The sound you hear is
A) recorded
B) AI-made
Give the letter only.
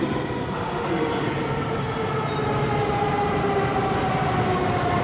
A